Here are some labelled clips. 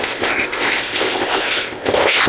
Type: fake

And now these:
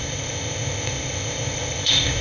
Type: fake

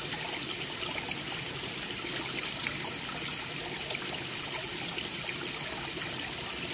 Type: real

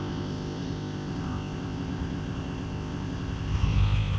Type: fake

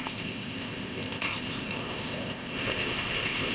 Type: fake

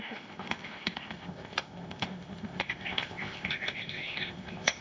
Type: fake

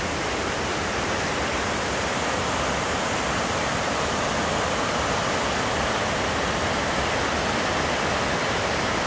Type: real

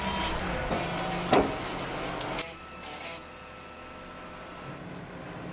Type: real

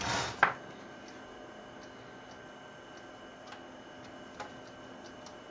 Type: real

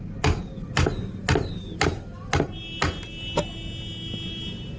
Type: real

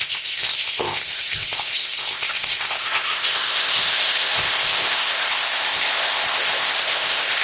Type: fake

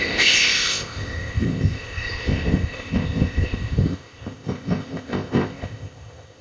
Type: fake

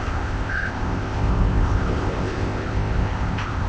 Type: fake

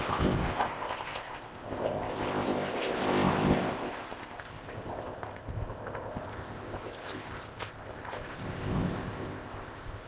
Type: fake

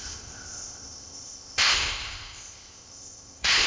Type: fake